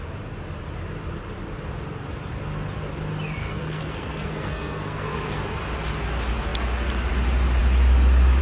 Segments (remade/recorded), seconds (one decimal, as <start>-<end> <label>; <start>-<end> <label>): 0.0-3.4 recorded; 3.4-5.4 remade; 5.4-8.4 recorded